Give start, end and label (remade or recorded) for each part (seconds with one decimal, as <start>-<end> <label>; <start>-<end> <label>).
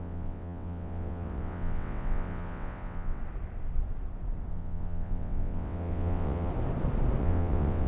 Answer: 0.0-3.2 remade; 3.2-4.5 recorded; 4.5-6.5 remade; 6.5-7.2 recorded; 7.2-7.9 remade